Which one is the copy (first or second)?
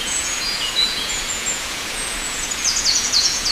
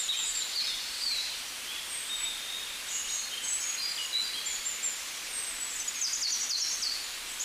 first